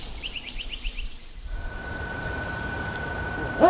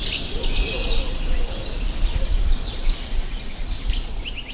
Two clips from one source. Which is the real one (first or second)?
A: second